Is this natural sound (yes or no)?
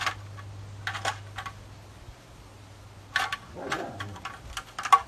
yes